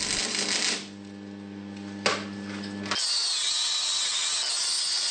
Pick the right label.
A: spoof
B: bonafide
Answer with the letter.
B